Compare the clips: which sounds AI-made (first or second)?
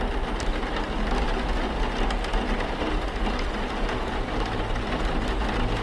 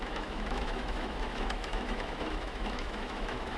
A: second